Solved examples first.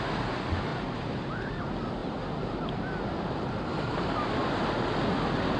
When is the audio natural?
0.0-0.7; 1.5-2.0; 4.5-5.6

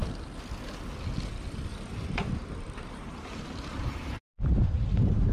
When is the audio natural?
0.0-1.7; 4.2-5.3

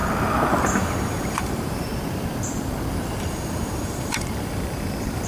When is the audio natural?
0.0-0.6; 1.9-2.9